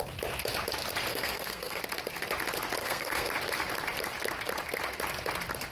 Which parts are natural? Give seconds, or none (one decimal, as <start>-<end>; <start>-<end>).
0.0-1.1; 1.8-2.8; 3.3-5.7